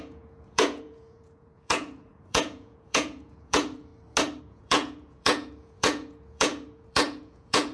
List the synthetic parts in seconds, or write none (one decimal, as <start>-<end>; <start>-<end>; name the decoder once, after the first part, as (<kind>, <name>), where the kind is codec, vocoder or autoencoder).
0.0-3.9 (vocoder, Vocos); 4.4-7.7